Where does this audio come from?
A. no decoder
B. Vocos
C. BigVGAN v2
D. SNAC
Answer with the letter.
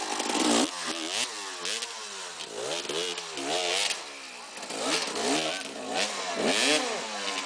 A